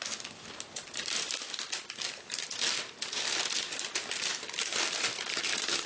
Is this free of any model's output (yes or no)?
yes